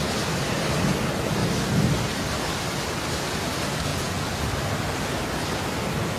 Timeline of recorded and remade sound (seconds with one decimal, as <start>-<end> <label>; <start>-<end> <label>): 0.0-3.9 recorded; 3.9-4.4 remade; 4.4-6.2 recorded